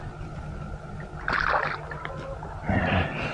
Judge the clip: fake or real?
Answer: real